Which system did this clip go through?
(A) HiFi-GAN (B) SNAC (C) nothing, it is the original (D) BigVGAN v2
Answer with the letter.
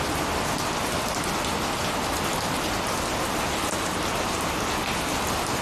C